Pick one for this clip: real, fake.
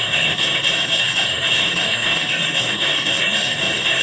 fake